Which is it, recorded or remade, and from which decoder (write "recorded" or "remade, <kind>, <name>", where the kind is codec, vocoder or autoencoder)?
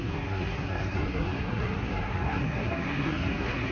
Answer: remade, codec, SNAC